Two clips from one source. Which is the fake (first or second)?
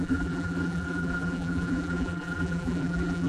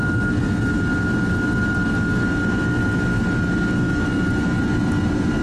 first